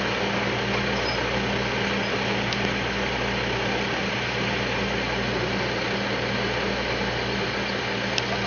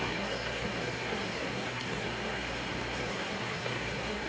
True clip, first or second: first